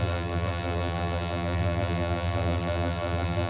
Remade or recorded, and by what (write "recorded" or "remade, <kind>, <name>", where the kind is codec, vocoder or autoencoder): remade, vocoder, BigVGAN v2